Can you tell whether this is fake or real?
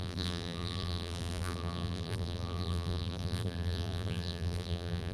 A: fake